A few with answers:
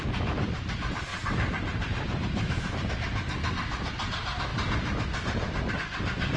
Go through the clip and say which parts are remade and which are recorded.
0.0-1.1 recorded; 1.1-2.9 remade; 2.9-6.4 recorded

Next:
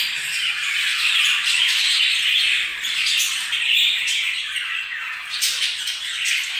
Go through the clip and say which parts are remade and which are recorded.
0.0-0.9 recorded; 0.9-2.0 remade; 2.0-5.2 recorded; 5.2-6.1 remade; 6.1-6.6 recorded

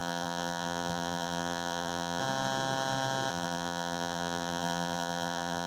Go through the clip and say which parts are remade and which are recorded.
0.0-2.2 remade; 2.2-3.3 recorded; 3.3-5.7 remade

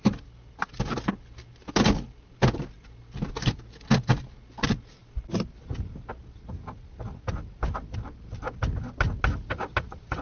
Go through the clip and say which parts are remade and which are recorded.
0.0-10.2 recorded

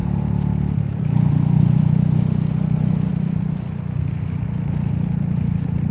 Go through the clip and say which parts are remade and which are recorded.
0.0-3.1 recorded; 3.1-4.0 remade; 4.0-5.9 recorded